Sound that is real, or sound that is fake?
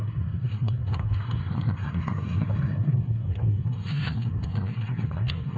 fake